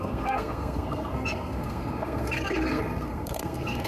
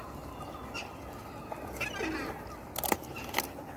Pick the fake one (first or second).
first